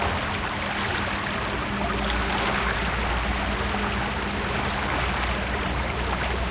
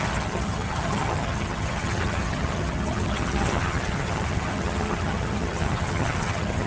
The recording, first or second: first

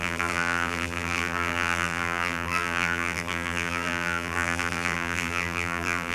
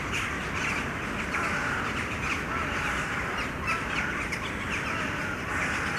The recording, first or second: second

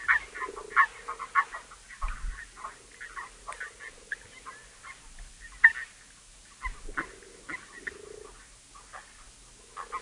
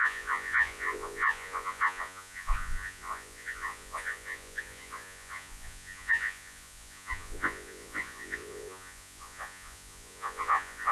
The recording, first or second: first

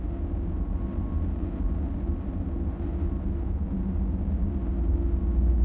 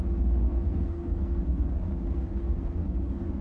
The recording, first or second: first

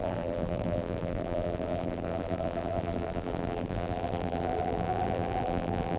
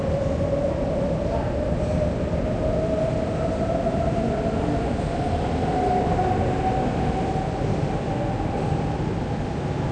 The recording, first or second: second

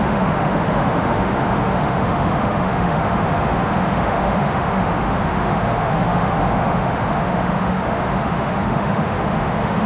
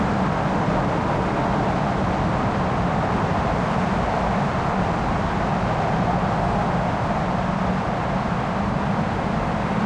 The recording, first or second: second